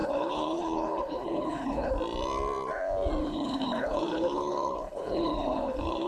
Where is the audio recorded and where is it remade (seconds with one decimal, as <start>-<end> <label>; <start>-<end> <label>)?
0.0-1.9 remade; 1.9-3.2 recorded; 3.2-6.1 remade

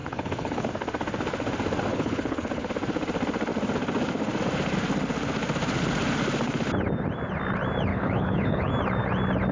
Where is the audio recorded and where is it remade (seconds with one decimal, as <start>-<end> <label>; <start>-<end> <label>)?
0.0-0.7 remade; 0.7-1.9 recorded; 1.9-2.7 remade; 2.7-7.9 recorded; 7.9-8.7 remade; 8.7-9.5 recorded